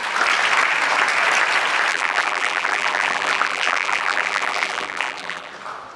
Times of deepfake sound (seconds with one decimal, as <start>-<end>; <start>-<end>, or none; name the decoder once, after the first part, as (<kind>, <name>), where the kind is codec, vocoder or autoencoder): 1.9-5.5 (vocoder, BigVGAN v2)